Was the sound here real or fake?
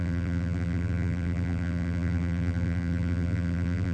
fake